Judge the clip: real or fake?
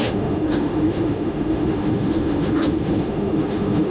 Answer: fake